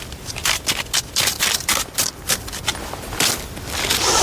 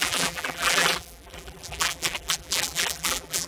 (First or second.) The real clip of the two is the first